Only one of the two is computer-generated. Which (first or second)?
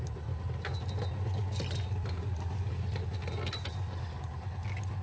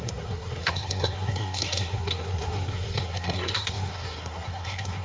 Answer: second